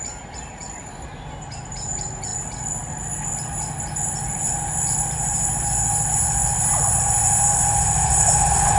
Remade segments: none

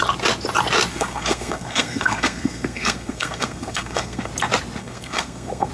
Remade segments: 0.9-4.3 (codec, SNAC); 4.8-5.7

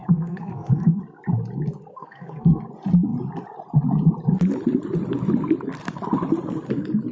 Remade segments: 0.0-1.0 (codec, SNAC); 1.9-2.6

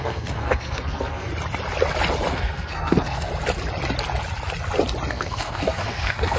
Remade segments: 0.0-1.3 (codec, SNAC); 2.3-3.3; 5.1-6.4

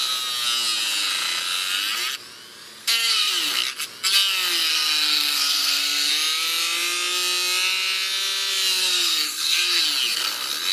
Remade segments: 2.8-3.3 (codec, SNAC); 4.7-6.1; 8.8-9.8

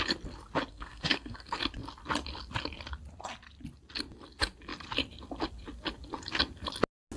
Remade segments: 0.7-1.6 (codec, SNAC)